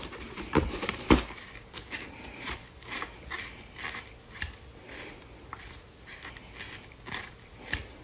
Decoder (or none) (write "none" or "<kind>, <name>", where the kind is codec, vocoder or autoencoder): none